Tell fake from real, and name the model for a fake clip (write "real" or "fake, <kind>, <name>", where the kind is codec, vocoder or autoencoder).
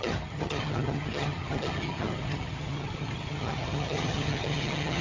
fake, vocoder, HiFi-GAN